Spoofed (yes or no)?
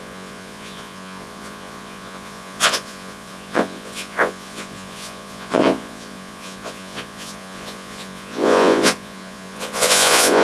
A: yes